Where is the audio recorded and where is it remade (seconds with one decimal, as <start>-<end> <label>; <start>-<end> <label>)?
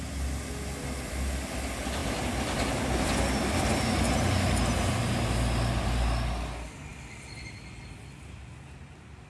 0.0-9.3 recorded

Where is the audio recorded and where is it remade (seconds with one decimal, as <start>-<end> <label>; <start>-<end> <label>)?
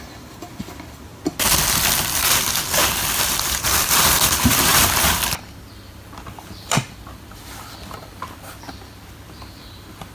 0.0-1.1 remade; 1.1-3.0 recorded; 3.0-10.1 remade